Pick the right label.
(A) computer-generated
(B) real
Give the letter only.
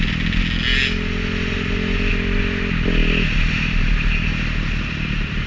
B